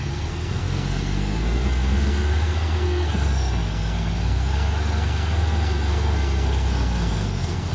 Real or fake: fake